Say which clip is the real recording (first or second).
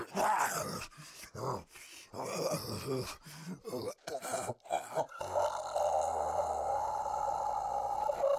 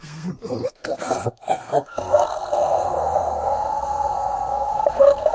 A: first